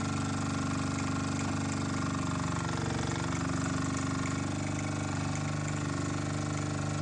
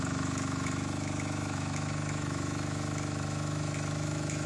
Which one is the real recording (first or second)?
first